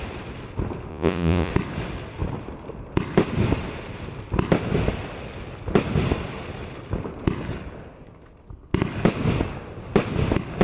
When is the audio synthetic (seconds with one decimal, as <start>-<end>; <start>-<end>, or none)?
0.9-1.5